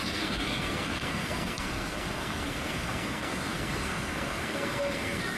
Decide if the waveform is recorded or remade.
remade